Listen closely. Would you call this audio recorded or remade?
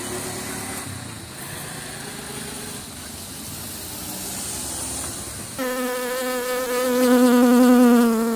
recorded